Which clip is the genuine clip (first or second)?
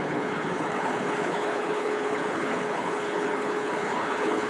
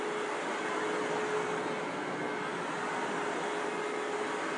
second